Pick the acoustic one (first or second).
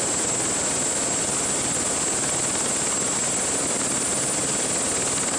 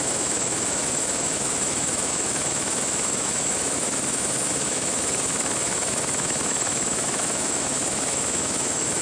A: first